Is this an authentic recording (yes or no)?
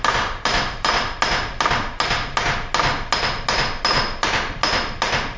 yes